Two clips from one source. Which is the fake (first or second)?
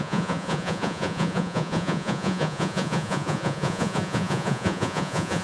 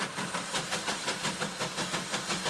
first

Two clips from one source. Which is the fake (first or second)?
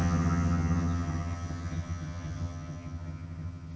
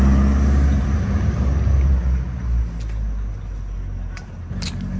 first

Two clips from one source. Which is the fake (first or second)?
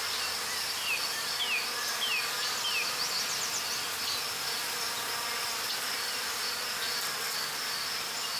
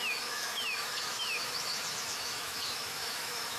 second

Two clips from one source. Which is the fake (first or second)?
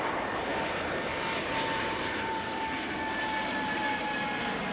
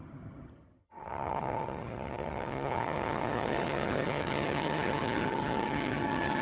second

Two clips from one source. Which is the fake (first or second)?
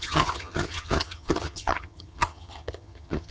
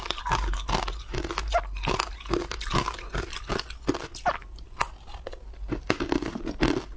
first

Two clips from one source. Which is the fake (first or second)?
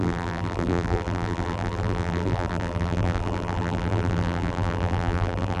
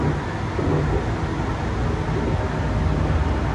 first